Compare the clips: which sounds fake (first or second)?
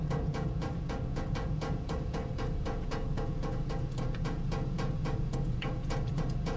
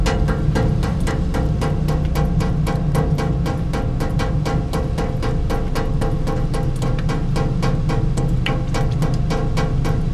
first